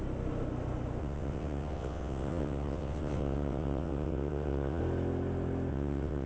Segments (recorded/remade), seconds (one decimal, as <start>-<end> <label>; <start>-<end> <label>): 0.0-1.0 recorded; 1.0-4.8 remade; 4.8-5.7 recorded; 5.7-6.3 remade